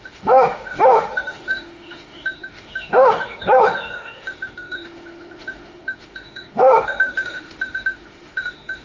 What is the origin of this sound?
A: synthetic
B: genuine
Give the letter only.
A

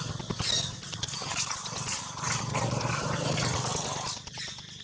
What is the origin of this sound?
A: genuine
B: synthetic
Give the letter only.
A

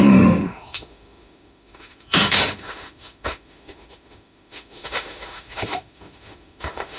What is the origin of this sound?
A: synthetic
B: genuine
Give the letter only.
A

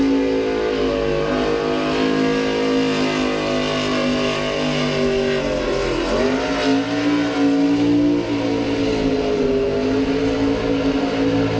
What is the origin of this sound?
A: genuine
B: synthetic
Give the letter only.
A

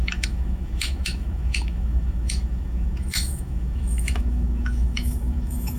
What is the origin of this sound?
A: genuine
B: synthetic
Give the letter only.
B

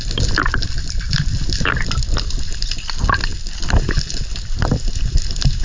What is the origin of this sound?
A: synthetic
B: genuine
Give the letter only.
B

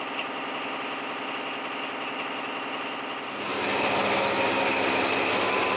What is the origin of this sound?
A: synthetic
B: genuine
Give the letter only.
B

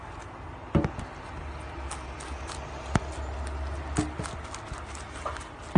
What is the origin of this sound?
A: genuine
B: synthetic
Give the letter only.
A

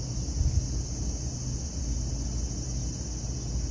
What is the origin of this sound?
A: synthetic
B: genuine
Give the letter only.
B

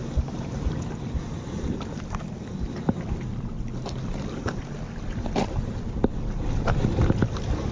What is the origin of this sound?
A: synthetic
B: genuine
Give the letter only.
B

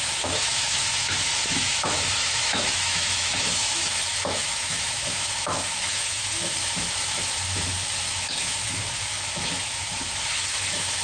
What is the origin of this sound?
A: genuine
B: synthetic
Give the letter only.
B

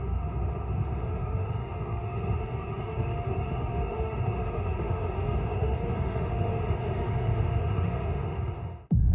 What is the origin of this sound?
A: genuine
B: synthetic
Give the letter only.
B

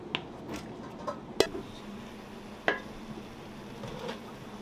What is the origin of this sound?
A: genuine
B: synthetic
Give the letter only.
A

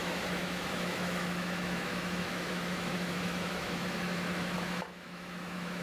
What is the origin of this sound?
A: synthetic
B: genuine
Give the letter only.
A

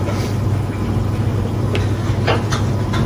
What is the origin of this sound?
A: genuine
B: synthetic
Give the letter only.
A